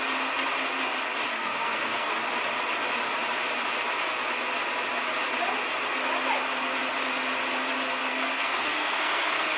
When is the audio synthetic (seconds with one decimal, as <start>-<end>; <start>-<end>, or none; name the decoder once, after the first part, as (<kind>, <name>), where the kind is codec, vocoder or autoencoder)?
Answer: 1.3-2.1 (codec, SNAC); 8.0-9.6